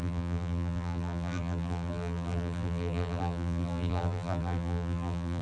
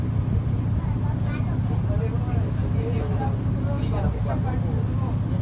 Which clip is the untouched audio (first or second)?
second